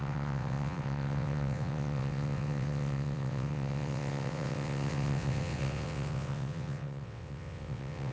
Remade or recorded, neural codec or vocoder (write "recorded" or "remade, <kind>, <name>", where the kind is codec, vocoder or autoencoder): remade, vocoder, WaveNeXt